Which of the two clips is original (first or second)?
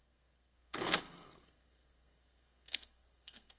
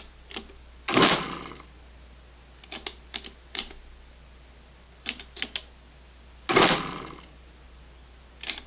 second